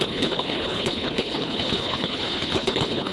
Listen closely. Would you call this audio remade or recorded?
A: remade